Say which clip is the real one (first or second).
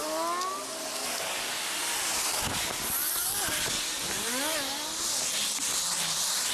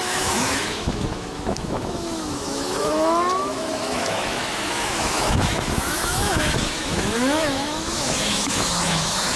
first